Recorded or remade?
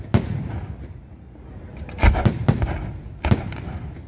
recorded